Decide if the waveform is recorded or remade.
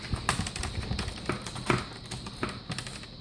recorded